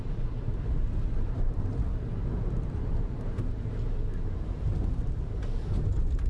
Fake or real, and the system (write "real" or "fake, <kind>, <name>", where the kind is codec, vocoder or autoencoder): fake, vocoder, BigVGAN v2